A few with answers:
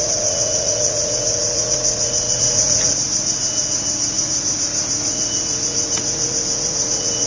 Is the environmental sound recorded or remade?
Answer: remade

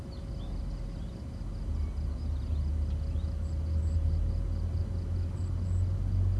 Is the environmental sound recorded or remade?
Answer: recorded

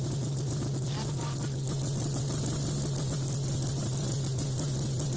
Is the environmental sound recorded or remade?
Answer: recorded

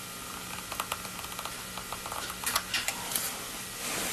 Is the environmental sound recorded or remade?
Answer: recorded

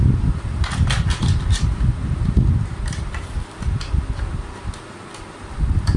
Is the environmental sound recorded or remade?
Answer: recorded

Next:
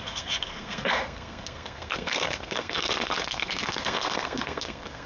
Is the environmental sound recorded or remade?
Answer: remade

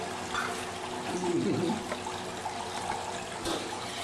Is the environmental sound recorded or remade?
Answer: recorded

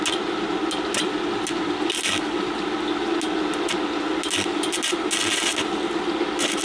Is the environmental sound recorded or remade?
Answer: recorded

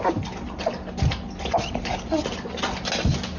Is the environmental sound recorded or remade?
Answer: recorded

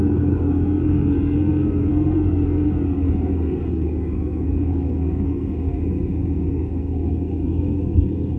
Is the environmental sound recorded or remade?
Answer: remade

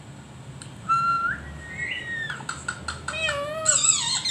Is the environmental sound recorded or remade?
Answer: recorded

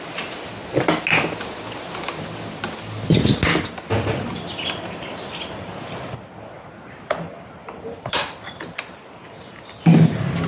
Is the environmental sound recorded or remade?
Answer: recorded